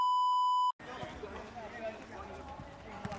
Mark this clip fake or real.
real